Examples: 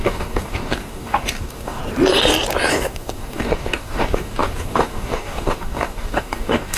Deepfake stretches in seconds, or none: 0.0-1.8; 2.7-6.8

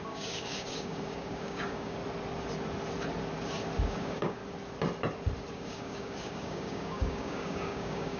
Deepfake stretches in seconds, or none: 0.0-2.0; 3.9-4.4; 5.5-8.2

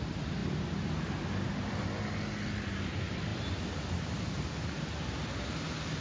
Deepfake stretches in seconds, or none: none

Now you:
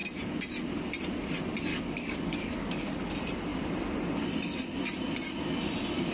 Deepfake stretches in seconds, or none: 1.7-3.1